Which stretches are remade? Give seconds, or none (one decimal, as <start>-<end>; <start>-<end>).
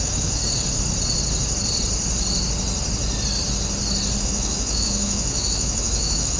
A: 0.0-0.4; 4.2-6.4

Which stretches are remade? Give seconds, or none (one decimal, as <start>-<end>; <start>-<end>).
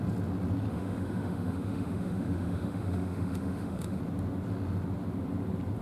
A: 0.7-4.0